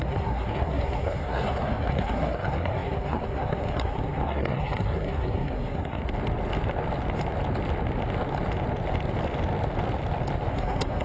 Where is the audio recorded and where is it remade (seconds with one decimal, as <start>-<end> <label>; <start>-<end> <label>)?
0.0-6.0 remade; 6.0-10.5 recorded; 10.5-11.0 remade